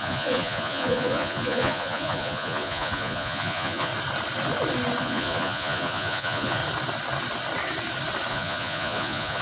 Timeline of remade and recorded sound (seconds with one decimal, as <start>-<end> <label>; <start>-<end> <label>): 0.0-3.9 remade; 3.9-5.0 recorded; 5.0-6.6 remade; 6.6-8.3 recorded; 8.3-9.4 remade